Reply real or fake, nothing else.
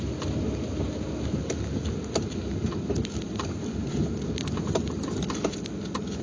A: real